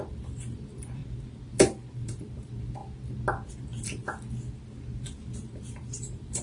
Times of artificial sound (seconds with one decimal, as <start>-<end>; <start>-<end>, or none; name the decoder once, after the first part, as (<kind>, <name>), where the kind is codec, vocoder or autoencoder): 0.0-1.0 (vocoder, BigVGAN v2); 1.5-2.8; 3.5-4.0; 5.4-6.4